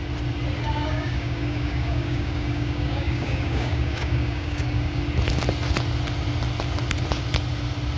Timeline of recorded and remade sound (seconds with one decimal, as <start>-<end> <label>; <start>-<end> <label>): 0.0-0.6 recorded; 0.6-5.0 remade; 5.0-8.0 recorded

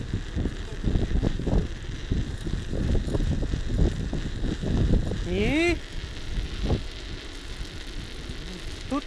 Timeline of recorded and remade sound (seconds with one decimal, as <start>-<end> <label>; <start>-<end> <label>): 0.0-9.1 recorded